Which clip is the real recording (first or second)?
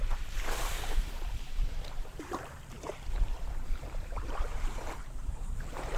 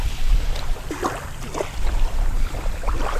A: second